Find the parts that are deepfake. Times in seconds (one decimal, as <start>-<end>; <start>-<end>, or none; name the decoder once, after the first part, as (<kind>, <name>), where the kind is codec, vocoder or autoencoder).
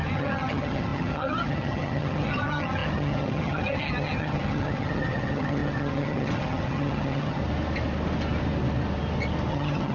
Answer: 0.0-7.4 (vocoder, HiFi-GAN); 9.5-9.9